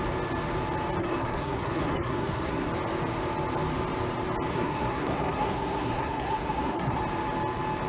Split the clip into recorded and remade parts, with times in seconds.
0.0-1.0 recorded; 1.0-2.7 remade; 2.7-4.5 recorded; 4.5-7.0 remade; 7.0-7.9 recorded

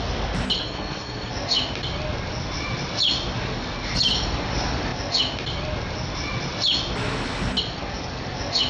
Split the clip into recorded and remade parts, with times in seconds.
0.0-0.6 recorded; 0.6-1.3 remade; 1.3-8.7 recorded